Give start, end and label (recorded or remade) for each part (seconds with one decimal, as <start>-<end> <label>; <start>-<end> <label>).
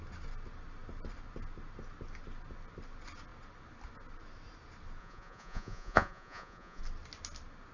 0.0-5.0 recorded; 5.0-6.8 remade; 6.8-7.7 recorded